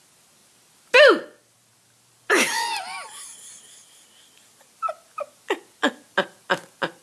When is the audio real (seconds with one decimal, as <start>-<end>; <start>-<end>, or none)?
0.0-7.0